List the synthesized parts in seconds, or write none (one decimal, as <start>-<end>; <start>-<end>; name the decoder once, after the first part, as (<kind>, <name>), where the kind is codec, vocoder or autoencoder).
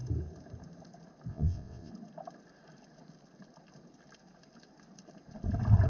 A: 1.3-1.9 (vocoder, WaveNeXt)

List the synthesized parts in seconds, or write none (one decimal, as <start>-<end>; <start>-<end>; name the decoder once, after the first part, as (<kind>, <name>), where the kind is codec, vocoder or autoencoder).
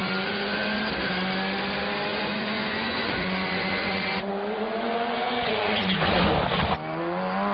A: 0.0-0.8 (vocoder, Vocos); 2.1-6.3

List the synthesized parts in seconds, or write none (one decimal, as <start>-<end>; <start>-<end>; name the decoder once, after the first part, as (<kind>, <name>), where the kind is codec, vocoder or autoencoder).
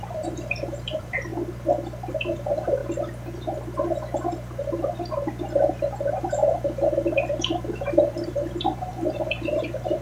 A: 0.0-1.3 (vocoder, BigVGAN v2); 2.1-2.8; 6.1-10.0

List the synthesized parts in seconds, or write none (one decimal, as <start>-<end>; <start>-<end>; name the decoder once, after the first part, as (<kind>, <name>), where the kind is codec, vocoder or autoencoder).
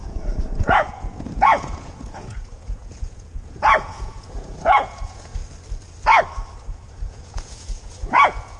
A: 0.0-5.4 (vocoder, Vocos); 6.6-8.6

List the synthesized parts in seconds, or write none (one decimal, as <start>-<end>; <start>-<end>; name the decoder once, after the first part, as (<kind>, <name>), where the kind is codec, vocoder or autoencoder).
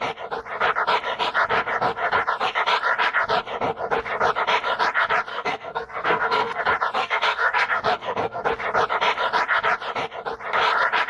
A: 5.3-6.6 (codec, SNAC); 7.0-8.4